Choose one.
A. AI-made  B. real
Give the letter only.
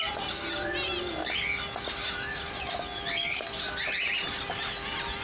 B